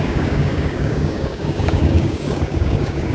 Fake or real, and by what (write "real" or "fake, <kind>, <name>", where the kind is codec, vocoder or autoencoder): fake, codec, DAC